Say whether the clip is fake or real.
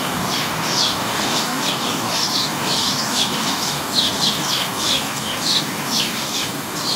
fake